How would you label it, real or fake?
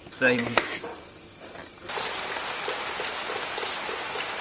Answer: real